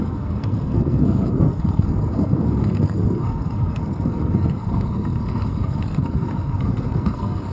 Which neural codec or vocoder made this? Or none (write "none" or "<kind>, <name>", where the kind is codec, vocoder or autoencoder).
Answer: codec, SNAC